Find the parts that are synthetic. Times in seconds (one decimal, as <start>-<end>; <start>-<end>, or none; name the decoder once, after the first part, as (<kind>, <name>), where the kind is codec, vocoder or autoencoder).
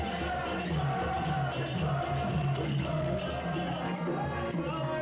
2.3-3.2 (codec, SNAC)